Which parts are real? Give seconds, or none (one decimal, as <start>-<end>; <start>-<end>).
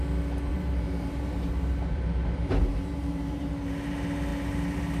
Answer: 0.0-0.5; 3.5-5.0